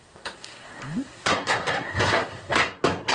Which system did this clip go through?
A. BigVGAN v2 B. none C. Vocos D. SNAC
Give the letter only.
D